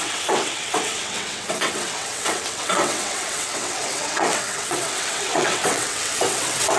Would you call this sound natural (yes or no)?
no